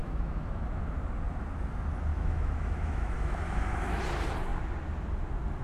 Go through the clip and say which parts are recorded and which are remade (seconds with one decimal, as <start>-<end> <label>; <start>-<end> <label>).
0.0-0.8 remade; 0.8-2.1 recorded; 2.1-4.0 remade; 4.0-5.6 recorded